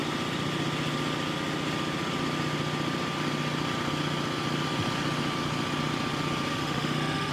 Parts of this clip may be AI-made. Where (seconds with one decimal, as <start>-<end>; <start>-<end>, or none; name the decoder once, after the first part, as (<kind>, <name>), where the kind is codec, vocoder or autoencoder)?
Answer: 6.5-7.3 (autoencoder, DAC-VAE)